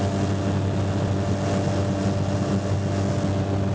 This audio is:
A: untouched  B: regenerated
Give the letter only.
A